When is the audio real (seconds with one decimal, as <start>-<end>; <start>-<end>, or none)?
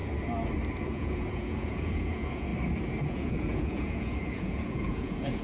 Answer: 0.0-0.8; 2.5-3.1